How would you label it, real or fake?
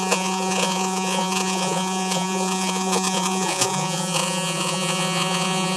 fake